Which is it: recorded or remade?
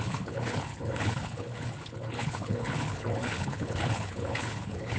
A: remade